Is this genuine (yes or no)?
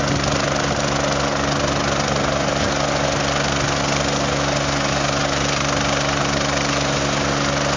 yes